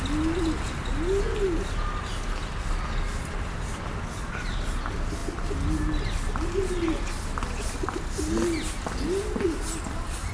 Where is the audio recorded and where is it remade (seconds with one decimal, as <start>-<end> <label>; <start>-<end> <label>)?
0.0-10.3 recorded